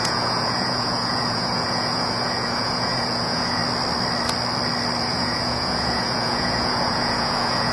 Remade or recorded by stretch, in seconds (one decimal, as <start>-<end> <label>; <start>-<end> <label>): 0.0-3.6 remade; 3.6-5.0 recorded; 5.0-7.7 remade